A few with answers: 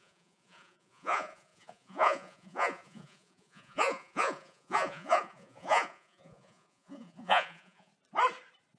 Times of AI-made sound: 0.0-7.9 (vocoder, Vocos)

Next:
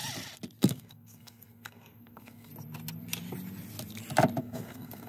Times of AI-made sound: 0.6-2.5 (codec, SNAC); 4.4-5.1

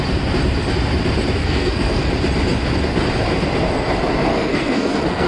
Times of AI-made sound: 1.4-2.1 (codec, SNAC); 4.3-5.3

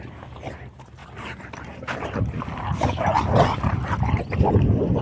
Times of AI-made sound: none

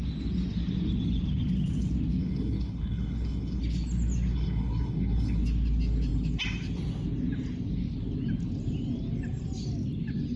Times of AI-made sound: 2.2-3.6 (codec, HILCodec); 4.3-5.4